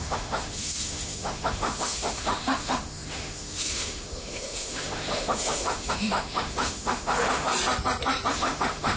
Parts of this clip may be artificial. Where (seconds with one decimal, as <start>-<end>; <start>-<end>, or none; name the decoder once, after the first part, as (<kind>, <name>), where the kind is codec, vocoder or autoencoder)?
0.0-7.5 (autoencoder, DAC-VAE); 8.3-9.0